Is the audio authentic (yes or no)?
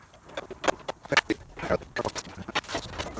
yes